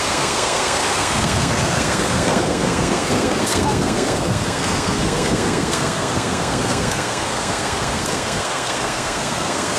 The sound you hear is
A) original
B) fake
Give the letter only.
B